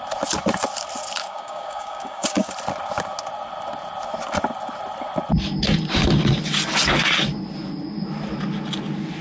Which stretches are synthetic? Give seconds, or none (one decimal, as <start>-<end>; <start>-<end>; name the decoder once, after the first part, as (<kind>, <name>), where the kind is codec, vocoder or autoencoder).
1.2-2.5 (codec, DAC)